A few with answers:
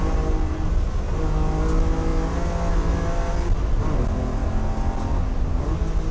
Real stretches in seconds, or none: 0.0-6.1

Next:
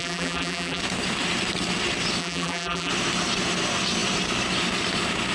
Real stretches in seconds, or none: 0.8-2.2; 2.9-5.3

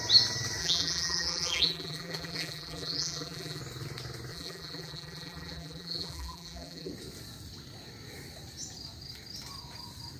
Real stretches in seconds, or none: 0.0-0.6; 3.6-4.3; 6.9-10.2